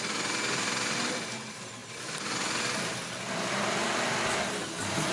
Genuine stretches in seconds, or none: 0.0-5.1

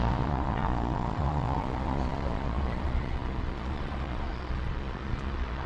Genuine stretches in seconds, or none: none

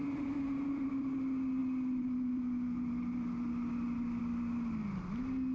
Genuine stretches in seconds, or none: 0.9-5.5

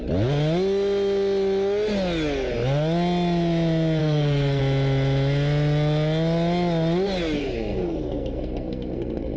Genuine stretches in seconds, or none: 0.0-4.0; 4.6-7.4

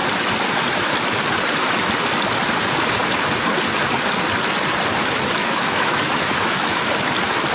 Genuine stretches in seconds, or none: 0.0-5.4; 6.9-7.5